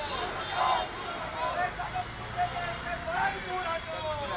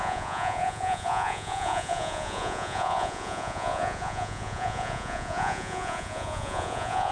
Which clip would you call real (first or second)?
first